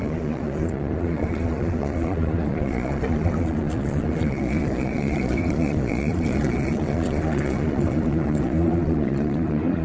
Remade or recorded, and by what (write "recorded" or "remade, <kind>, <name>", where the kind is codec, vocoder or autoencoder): remade, vocoder, Vocos